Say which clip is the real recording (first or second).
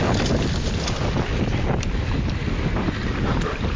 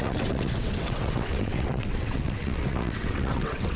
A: first